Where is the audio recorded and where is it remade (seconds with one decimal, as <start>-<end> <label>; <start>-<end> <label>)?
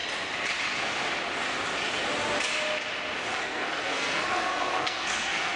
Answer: 0.0-3.4 recorded; 3.4-5.6 remade